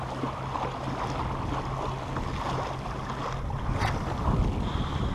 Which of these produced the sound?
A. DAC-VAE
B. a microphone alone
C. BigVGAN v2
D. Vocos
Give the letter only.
B